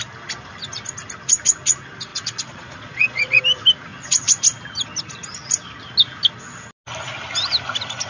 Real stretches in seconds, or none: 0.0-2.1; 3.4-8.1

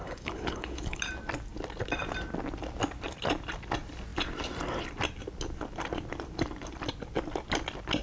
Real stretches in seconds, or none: 1.0-8.0

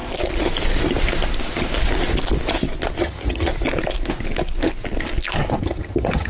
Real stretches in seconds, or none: 0.0-3.0; 3.5-5.6

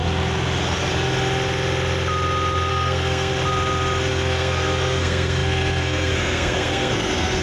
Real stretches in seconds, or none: 0.0-2.7; 3.3-4.1

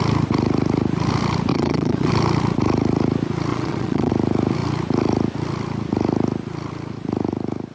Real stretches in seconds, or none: 0.0-1.5; 2.1-3.5; 4.1-7.7